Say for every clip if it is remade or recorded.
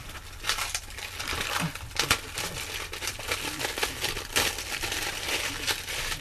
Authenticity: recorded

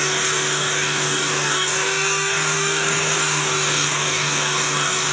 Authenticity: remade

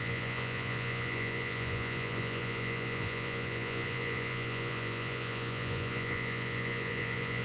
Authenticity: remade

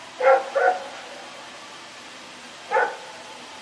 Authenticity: recorded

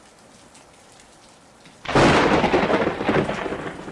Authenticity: recorded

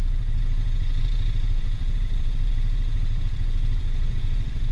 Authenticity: remade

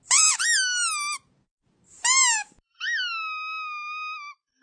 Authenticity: recorded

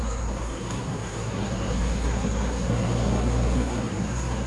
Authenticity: remade